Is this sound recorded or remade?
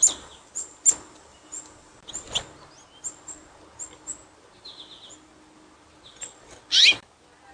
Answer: recorded